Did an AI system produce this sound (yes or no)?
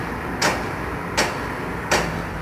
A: no